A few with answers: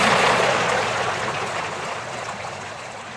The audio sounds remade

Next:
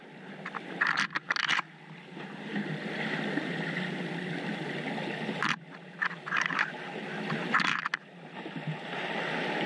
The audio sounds recorded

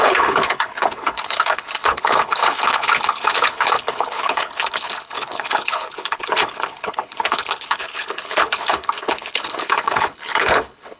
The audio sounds remade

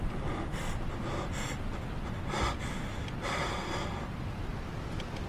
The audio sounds recorded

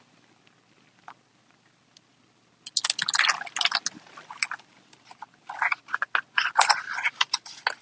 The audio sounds recorded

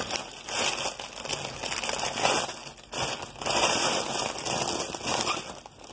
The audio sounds recorded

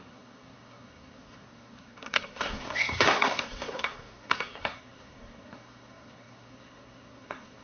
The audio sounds remade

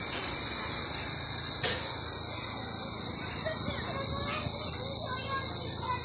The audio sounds recorded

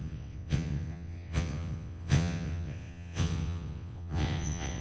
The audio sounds remade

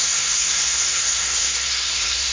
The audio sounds remade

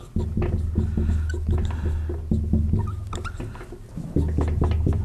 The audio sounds recorded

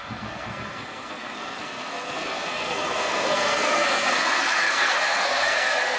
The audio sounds remade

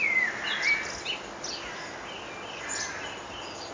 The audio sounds recorded